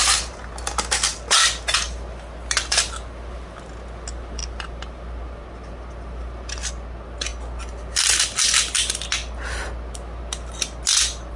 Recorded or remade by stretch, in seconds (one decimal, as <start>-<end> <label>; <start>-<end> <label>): 0.0-11.4 recorded